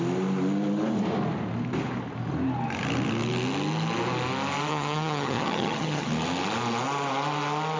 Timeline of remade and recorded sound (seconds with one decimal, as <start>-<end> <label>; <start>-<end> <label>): 0.0-4.7 recorded; 4.7-6.1 remade; 6.1-7.8 recorded